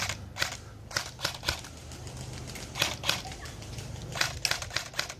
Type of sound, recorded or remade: recorded